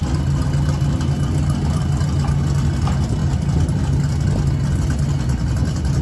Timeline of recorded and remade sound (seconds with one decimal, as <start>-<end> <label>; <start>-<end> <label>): 0.0-3.2 recorded; 3.2-3.9 remade; 3.9-6.0 recorded